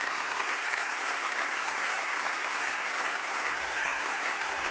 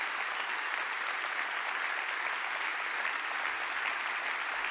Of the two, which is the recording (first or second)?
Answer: second